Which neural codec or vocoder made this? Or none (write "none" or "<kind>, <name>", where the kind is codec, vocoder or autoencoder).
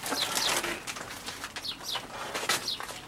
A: none